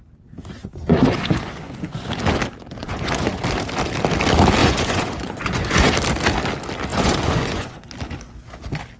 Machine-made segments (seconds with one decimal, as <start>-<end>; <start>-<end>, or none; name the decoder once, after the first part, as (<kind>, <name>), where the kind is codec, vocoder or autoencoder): 0.6-2.1 (vocoder, Vocos); 2.8-3.4; 4.6-5.9; 6.9-7.9